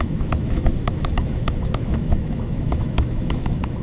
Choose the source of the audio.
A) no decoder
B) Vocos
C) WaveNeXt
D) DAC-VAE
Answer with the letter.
D